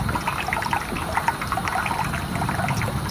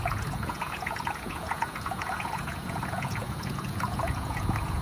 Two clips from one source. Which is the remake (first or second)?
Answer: second